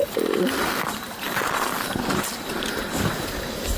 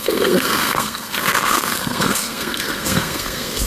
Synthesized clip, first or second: second